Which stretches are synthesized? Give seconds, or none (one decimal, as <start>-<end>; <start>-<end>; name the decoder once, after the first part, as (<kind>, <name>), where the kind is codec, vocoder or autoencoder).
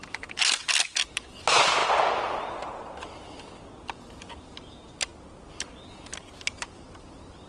none